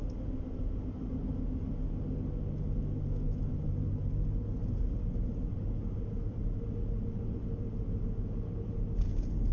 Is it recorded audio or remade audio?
recorded